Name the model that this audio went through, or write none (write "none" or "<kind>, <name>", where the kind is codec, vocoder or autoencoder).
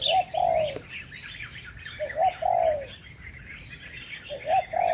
none